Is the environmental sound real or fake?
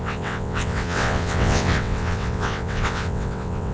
fake